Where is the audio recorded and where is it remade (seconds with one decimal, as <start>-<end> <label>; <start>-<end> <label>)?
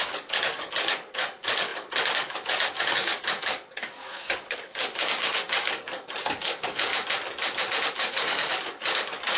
0.0-6.9 remade; 6.9-7.9 recorded; 7.9-9.4 remade